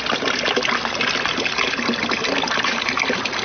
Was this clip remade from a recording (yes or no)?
no